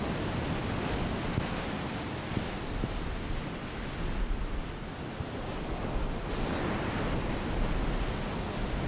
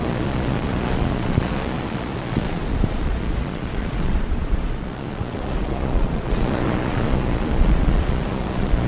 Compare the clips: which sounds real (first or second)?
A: first